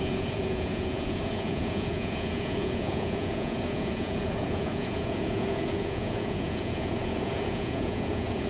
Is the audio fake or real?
fake